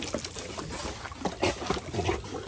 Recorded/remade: recorded